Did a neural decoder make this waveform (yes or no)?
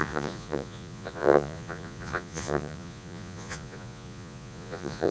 yes